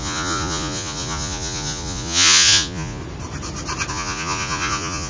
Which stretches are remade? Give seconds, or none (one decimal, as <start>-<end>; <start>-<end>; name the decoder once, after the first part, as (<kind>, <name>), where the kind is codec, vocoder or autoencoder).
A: 0.0-3.0 (vocoder, Vocos); 3.9-5.1